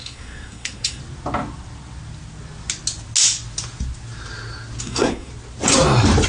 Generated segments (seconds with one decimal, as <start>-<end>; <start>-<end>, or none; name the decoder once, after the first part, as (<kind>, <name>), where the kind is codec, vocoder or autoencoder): 0.0-1.0 (codec, SNAC); 4.8-5.3